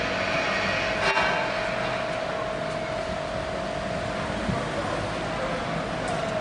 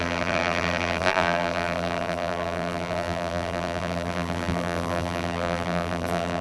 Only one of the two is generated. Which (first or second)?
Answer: second